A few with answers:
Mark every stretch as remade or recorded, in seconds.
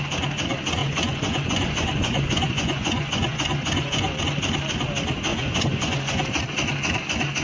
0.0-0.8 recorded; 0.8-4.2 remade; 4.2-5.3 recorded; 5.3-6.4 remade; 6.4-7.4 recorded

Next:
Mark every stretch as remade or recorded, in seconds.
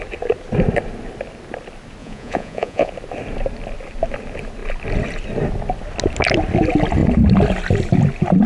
0.0-2.0 recorded; 2.0-2.9 remade; 2.9-8.5 recorded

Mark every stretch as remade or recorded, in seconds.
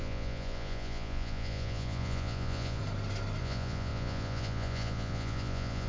0.0-2.8 remade; 2.8-3.4 recorded; 3.4-5.9 remade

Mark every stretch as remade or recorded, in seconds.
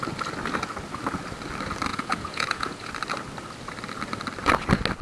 0.0-1.9 recorded; 1.9-2.9 remade; 2.9-5.0 recorded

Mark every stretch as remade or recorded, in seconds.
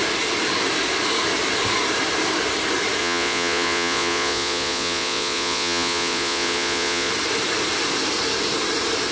0.0-3.0 recorded; 3.0-7.1 remade; 7.1-9.1 recorded